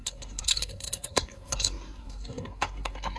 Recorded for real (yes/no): no